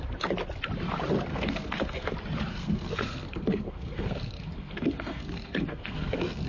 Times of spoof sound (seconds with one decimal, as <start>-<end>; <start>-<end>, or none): 1.3-2.1; 2.5-6.5